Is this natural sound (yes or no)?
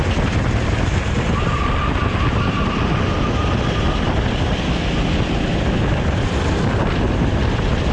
yes